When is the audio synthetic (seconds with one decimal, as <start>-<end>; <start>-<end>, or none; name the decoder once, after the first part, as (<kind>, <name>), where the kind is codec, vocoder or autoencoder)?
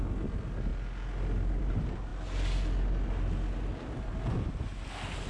none